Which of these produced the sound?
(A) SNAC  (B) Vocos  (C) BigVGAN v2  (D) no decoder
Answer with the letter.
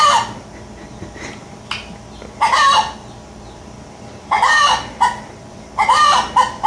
D